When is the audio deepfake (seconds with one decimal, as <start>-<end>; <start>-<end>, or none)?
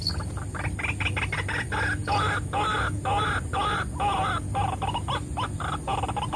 none